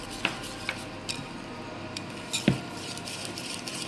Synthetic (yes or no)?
no